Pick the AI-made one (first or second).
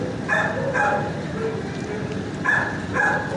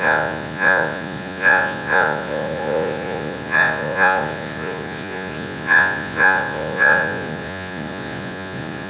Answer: second